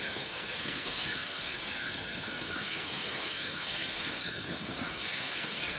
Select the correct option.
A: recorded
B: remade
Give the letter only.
B